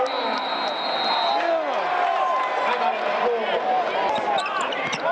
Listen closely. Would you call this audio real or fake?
real